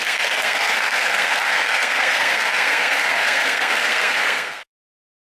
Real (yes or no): no